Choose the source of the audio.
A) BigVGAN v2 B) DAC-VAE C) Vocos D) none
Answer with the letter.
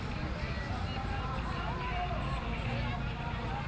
D